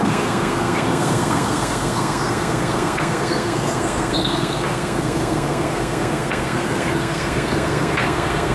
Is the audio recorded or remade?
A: remade